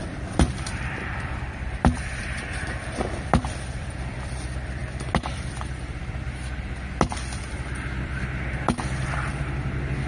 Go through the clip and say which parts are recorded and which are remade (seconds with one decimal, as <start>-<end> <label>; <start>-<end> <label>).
0.0-4.8 remade; 4.8-10.1 recorded